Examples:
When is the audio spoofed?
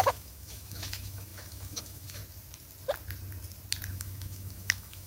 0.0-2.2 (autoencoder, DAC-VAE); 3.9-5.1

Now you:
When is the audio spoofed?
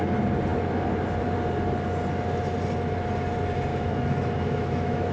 3.7-5.1 (autoencoder, DAC-VAE)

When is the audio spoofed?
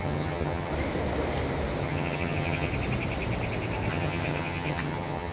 0.0-0.7 (vocoder, HiFi-GAN); 1.8-2.7; 3.9-5.3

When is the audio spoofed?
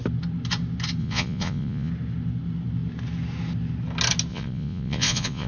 1.0-1.9 (vocoder, Vocos); 4.3-5.5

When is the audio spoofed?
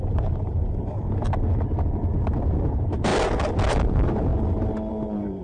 0.0-0.6 (vocoder, BigVGAN v2); 2.5-3.1; 3.7-4.3; 4.9-5.4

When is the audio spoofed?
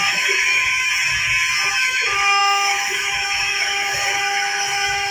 0.0-0.9 (autoencoder, DAC-VAE); 1.7-5.1